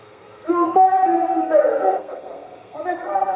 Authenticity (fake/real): fake